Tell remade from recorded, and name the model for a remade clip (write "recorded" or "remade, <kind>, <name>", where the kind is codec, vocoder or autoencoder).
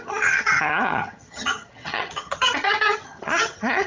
remade, vocoder, HiFi-GAN